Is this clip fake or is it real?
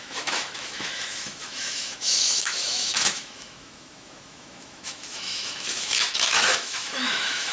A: fake